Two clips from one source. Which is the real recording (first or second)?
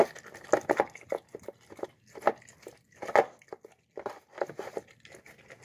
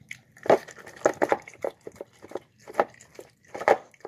first